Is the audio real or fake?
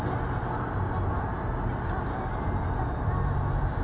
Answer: real